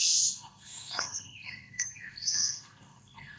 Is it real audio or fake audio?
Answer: fake